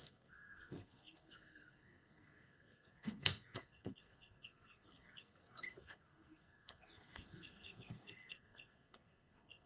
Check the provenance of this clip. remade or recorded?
remade